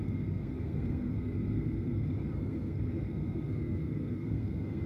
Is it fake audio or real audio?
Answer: fake